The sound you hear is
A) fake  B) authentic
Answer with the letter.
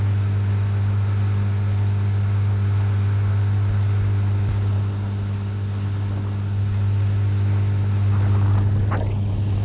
B